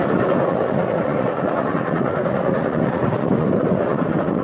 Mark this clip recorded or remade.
remade